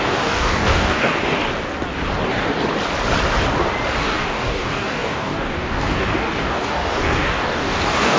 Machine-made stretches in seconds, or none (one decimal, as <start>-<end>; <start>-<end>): 0.0-1.1; 4.0-8.2